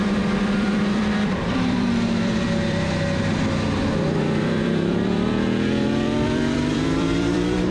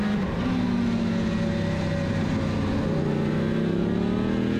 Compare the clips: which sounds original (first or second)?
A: second